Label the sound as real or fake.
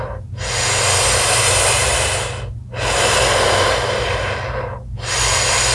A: real